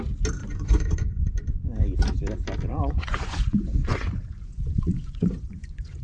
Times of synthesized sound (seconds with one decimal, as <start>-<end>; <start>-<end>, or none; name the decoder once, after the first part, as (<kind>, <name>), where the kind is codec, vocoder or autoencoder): 0.4-1.3 (vocoder, Vocos); 2.7-6.0